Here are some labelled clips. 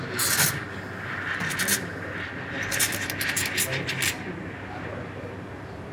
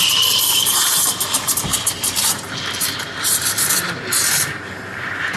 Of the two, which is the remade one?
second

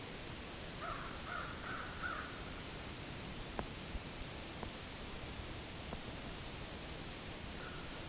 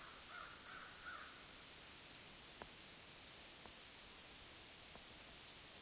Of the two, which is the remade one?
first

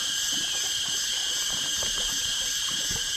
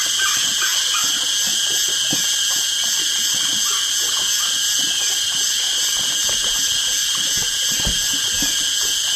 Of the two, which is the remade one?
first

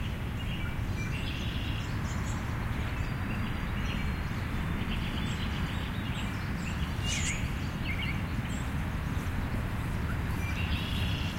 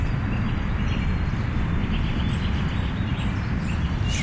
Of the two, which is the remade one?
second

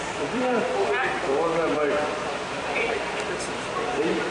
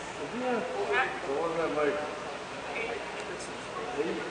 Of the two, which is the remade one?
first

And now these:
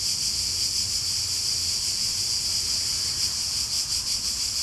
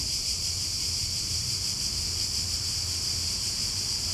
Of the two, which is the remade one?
second